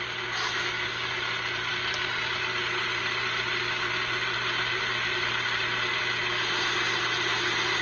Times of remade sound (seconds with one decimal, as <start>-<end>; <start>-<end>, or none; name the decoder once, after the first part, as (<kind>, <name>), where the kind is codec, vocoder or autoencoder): none